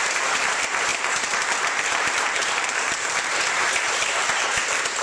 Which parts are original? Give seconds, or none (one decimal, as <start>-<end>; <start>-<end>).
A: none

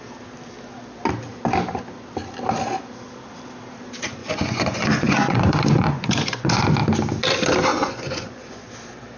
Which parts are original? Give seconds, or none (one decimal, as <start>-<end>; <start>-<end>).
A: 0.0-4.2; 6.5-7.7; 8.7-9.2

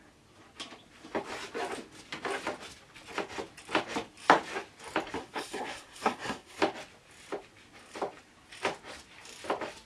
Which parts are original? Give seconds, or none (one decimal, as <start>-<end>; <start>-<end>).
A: 0.0-5.2; 6.6-9.9

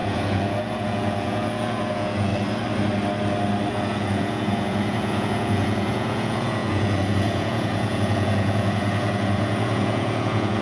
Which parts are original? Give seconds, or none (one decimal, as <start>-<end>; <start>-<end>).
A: 2.3-3.7